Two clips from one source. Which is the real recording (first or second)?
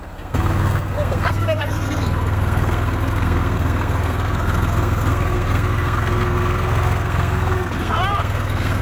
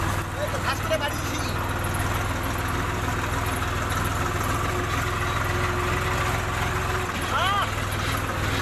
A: second